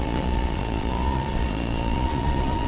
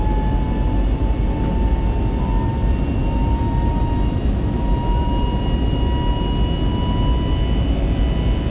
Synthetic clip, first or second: first